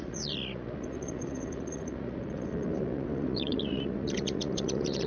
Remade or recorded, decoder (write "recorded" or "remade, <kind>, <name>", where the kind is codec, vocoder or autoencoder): remade, vocoder, Vocos